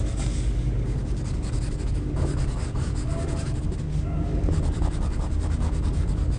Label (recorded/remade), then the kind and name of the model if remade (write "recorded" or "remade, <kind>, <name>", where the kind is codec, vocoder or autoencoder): remade, codec, DAC